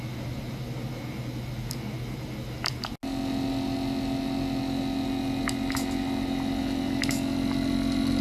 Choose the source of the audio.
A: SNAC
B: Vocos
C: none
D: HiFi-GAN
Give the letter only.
C